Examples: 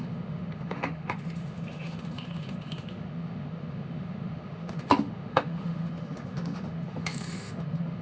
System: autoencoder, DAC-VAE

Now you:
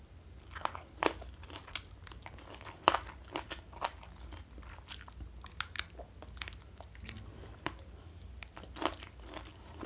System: none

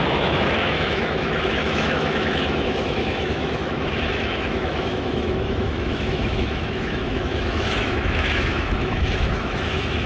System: autoencoder, DAC-VAE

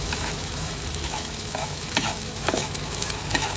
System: autoencoder, DAC-VAE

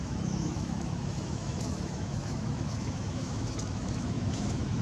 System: autoencoder, DAC-VAE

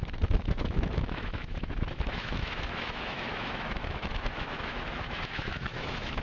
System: autoencoder, DAC-VAE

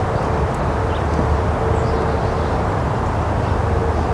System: none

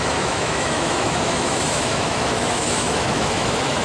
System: autoencoder, DAC-VAE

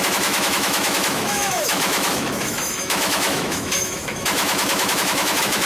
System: autoencoder, DAC-VAE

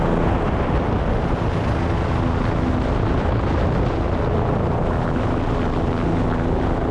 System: none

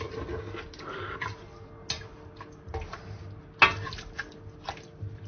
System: none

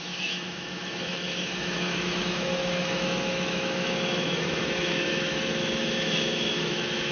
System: autoencoder, DAC-VAE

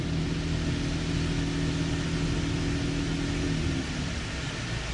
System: none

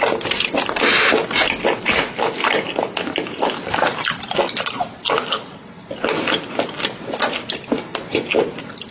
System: none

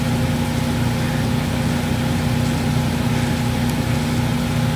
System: none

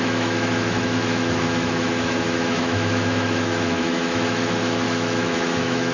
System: autoencoder, DAC-VAE